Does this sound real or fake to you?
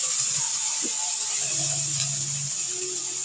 real